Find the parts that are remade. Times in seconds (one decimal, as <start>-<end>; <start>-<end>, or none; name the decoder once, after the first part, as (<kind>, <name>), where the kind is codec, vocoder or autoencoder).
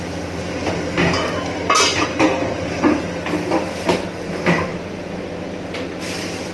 1.9-3.0 (vocoder, BigVGAN v2)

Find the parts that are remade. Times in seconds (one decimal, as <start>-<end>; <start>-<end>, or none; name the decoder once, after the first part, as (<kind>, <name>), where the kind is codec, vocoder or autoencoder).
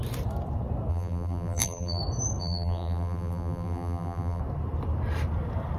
0.9-2.0 (vocoder, BigVGAN v2); 2.4-4.4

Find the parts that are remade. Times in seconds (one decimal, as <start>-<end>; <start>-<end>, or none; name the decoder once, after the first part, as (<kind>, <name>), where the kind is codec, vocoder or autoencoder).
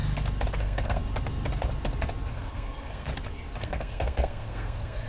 0.6-1.0 (codec, SNAC); 2.3-3.1; 3.6-5.1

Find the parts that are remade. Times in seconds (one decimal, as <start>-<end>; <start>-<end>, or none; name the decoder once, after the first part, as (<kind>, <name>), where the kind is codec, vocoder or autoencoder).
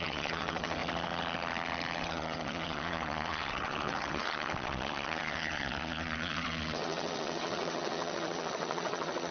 0.0-0.8 (vocoder, WaveNeXt); 2.0-9.3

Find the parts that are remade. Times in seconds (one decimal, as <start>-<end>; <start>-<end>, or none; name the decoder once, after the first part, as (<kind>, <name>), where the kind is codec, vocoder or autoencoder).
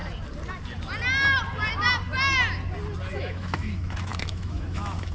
3.1-5.1 (autoencoder, DAC-VAE)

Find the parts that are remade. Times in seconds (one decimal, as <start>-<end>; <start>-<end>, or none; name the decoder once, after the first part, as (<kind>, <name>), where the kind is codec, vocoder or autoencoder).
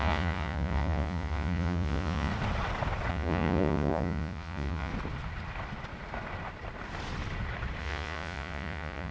0.0-2.3 (vocoder, Vocos); 3.1-4.9; 7.8-9.1